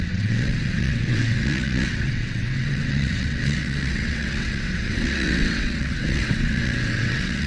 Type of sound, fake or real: fake